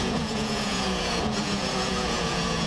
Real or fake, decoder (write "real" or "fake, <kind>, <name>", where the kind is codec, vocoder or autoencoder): fake, vocoder, Vocos